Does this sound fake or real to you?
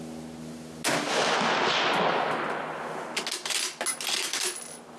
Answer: real